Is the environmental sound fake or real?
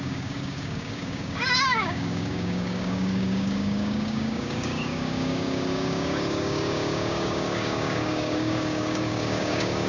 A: fake